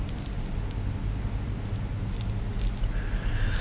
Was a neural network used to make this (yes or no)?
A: no